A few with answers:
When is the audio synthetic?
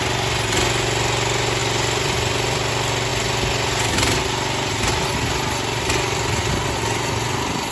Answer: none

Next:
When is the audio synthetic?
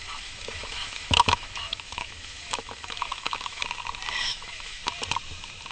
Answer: 0.0-3.6 (autoencoder, DAC-VAE); 4.2-4.8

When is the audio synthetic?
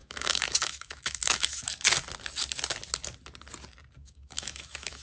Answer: 0.0-1.6 (autoencoder, DAC-VAE); 4.0-5.0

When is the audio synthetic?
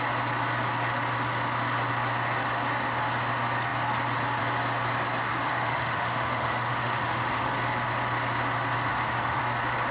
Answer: 5.3-7.5 (autoencoder, DAC-VAE); 8.9-9.4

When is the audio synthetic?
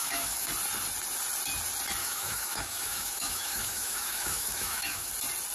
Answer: 0.0-0.5 (autoencoder, DAC-VAE); 2.0-5.1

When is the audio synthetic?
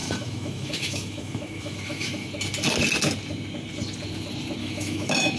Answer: 0.0-2.3 (autoencoder, DAC-VAE); 4.6-5.4